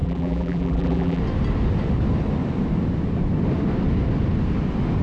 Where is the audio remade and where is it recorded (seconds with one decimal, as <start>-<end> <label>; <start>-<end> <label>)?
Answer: 0.0-1.2 remade; 1.2-5.0 recorded